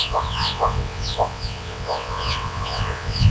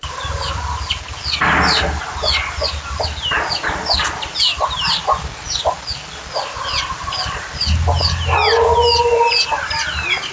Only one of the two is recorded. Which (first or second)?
second